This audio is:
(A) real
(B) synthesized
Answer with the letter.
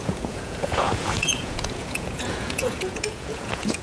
B